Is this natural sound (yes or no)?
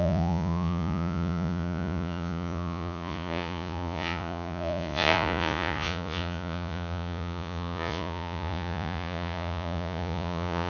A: no